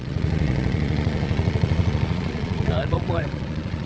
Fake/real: fake